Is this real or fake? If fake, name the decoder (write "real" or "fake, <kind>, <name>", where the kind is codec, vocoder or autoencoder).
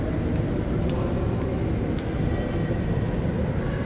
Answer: real